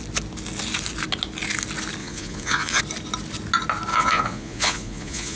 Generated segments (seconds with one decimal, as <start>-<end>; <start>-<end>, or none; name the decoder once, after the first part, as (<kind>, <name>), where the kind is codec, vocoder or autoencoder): 2.0-2.8 (vocoder, Vocos); 3.9-5.4